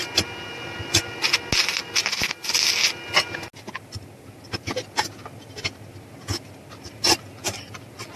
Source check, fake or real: real